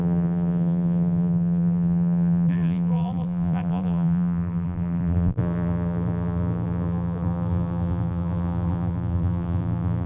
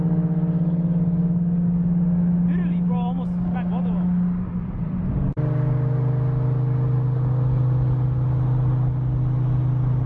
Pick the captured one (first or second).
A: second